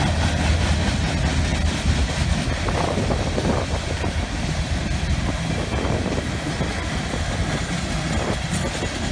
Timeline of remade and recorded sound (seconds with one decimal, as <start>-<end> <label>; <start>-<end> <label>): 0.0-9.1 recorded